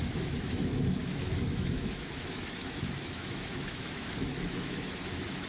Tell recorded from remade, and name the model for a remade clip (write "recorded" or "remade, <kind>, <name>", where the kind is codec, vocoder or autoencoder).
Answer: remade, autoencoder, DAC-VAE